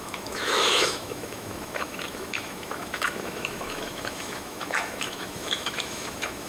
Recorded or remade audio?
remade